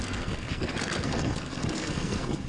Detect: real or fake fake